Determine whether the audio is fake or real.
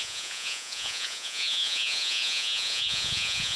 fake